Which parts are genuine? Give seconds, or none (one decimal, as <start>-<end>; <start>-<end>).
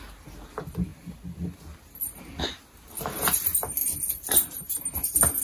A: 0.0-5.4